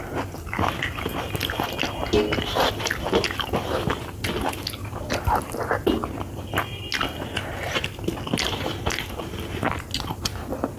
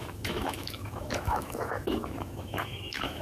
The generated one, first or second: second